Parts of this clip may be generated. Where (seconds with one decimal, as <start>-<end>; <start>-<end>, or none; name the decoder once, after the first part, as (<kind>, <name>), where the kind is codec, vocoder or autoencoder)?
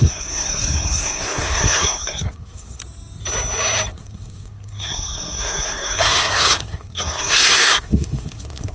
0.0-2.8 (codec, SNAC); 3.9-8.7